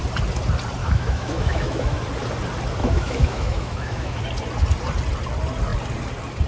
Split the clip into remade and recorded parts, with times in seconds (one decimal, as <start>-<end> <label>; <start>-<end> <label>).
0.0-0.8 recorded; 0.8-2.0 remade; 2.0-2.8 recorded; 2.8-4.2 remade; 4.2-6.5 recorded